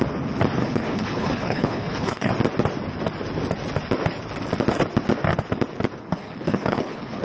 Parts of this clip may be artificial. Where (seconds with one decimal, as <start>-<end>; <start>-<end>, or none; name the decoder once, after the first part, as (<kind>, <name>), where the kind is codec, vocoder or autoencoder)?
0.6-2.3 (codec, HILCodec); 6.0-7.2